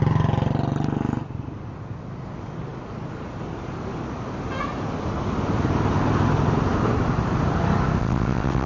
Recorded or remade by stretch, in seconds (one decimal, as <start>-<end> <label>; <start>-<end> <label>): 0.0-8.0 recorded; 8.0-8.7 remade